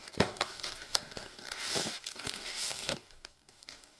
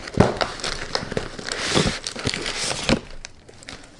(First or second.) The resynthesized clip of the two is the first